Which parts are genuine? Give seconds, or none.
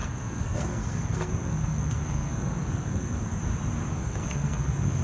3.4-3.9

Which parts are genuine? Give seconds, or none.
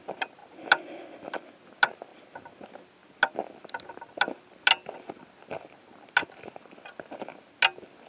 0.0-8.1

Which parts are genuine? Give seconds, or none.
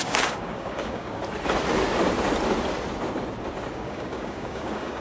1.2-3.7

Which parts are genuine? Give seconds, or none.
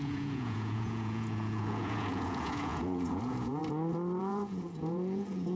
3.6-4.2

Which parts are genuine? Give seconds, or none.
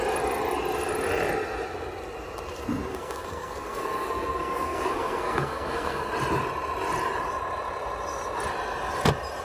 0.0-2.9; 6.1-9.4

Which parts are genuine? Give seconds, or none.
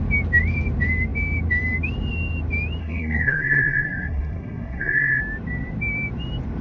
0.0-2.8; 5.2-6.6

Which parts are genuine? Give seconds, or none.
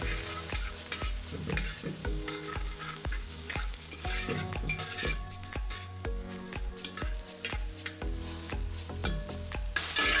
0.0-2.0; 6.7-10.2